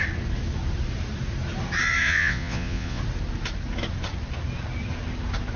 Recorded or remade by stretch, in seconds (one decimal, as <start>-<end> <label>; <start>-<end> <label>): 0.0-2.0 recorded; 2.0-3.0 remade; 3.0-5.6 recorded